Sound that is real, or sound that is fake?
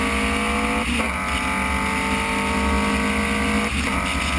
real